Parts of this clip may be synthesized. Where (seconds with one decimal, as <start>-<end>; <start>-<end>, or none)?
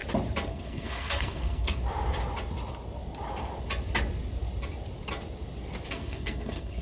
0.5-1.8; 5.9-6.8